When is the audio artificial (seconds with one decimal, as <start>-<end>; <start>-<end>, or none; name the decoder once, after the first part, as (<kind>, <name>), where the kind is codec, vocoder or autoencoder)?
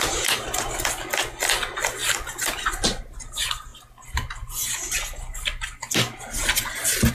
0.0-3.7 (vocoder, BigVGAN v2)